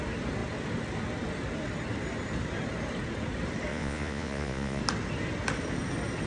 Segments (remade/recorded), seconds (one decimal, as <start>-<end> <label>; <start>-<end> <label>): 0.0-3.7 recorded; 3.7-4.8 remade; 4.8-6.3 recorded